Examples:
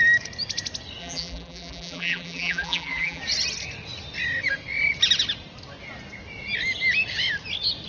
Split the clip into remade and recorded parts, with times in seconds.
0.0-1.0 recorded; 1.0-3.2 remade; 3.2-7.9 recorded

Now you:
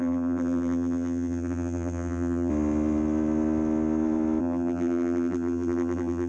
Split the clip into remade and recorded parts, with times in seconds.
0.0-2.5 remade; 2.5-4.4 recorded; 4.4-6.3 remade